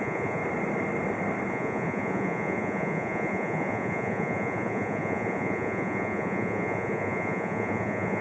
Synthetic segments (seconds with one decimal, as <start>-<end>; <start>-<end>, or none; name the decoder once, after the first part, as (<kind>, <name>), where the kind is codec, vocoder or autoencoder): 0.0-0.4 (vocoder, Vocos); 1.5-8.2